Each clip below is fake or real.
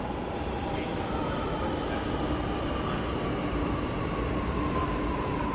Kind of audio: real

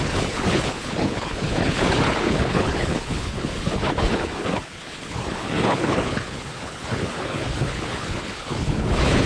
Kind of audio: fake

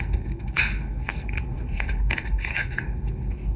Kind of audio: fake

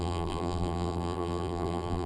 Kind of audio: fake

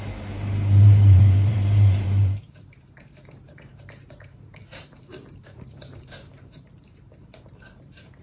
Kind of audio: fake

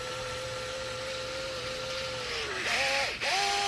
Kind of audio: real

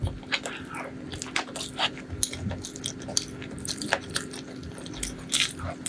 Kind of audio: real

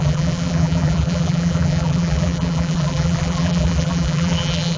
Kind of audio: fake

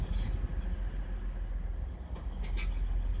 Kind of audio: real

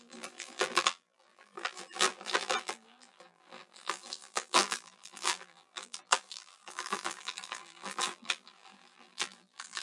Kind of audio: fake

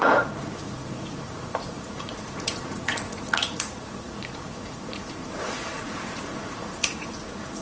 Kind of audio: fake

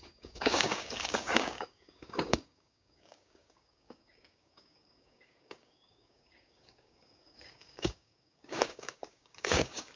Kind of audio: fake